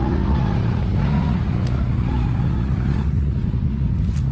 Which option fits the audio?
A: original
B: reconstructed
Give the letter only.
B